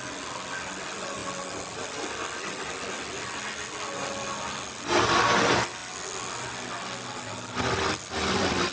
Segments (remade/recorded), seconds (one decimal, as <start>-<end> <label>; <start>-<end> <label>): 0.0-8.7 recorded